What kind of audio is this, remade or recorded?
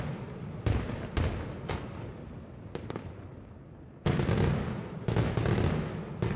recorded